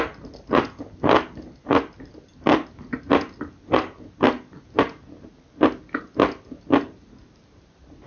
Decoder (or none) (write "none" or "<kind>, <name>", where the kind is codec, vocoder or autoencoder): none